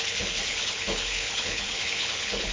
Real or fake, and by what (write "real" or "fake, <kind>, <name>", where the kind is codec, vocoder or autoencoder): fake, codec, HILCodec